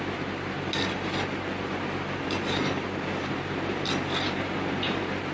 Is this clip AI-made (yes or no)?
no